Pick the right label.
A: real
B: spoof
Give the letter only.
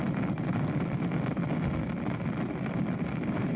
A